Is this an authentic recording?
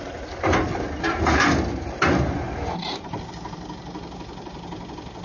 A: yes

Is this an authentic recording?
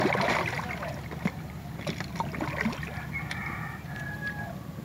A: yes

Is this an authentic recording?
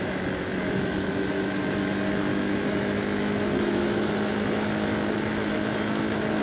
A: no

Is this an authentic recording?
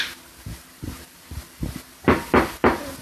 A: yes